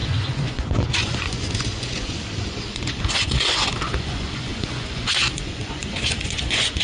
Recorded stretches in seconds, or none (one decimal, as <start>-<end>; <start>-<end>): none